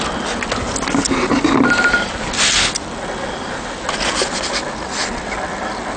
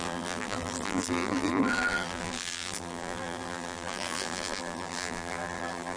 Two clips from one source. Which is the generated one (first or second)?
second